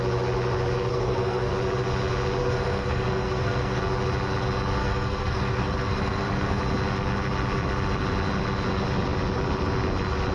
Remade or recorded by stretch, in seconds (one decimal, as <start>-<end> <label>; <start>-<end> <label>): 0.0-0.9 recorded; 0.9-1.5 remade; 1.5-2.4 recorded; 2.4-3.8 remade; 3.8-4.8 recorded; 4.8-6.6 remade; 6.6-10.3 recorded